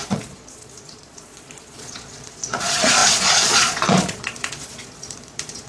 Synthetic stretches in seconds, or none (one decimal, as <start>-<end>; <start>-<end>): 0.0-5.7